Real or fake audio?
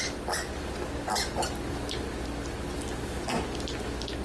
real